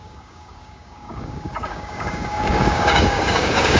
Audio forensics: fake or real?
fake